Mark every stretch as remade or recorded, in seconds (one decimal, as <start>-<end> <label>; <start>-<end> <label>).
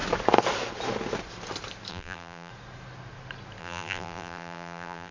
0.0-1.9 recorded; 1.9-2.5 remade; 2.5-3.6 recorded; 3.6-5.1 remade